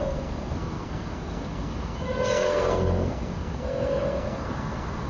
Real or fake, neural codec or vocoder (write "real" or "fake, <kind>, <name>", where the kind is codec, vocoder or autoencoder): fake, codec, SNAC